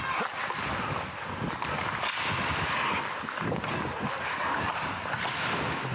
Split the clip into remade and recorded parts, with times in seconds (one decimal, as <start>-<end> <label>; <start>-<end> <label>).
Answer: 0.0-5.9 recorded